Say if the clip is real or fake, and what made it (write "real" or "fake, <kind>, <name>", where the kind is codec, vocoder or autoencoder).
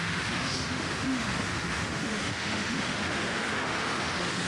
fake, autoencoder, DAC-VAE